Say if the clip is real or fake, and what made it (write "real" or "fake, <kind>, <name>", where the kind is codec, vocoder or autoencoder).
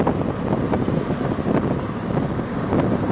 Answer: real